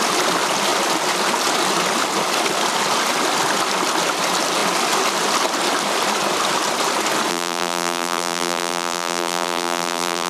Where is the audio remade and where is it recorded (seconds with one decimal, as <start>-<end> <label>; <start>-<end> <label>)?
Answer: 0.0-7.3 recorded; 7.3-10.3 remade